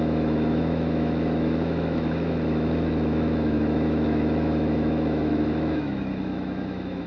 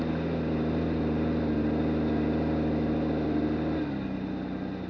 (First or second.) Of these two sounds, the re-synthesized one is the first